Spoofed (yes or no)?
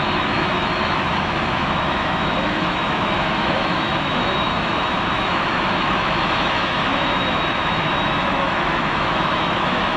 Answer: yes